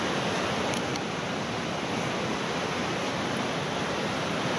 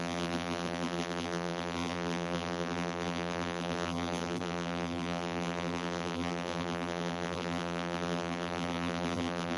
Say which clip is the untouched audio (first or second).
first